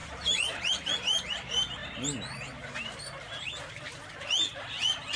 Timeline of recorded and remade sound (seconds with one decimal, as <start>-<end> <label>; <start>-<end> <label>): 0.0-5.2 recorded